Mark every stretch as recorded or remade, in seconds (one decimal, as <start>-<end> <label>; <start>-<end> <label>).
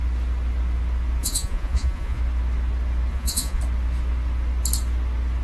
0.0-1.2 recorded; 1.2-2.2 remade; 2.2-3.1 recorded; 3.1-3.6 remade; 3.6-5.4 recorded